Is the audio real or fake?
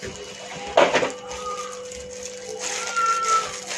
real